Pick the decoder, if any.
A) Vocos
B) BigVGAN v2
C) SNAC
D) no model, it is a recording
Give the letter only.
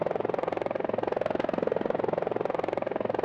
D